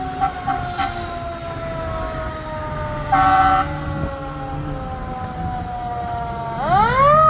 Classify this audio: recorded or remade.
recorded